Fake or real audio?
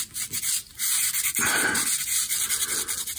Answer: real